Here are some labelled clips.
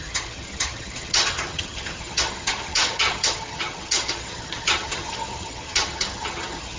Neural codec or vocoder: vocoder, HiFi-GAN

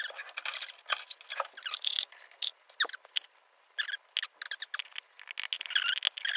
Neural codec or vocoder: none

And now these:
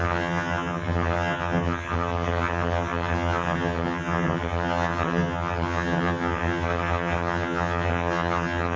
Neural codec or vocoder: vocoder, HiFi-GAN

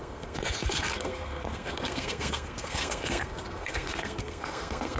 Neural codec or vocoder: codec, SNAC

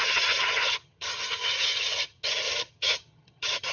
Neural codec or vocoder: vocoder, HiFi-GAN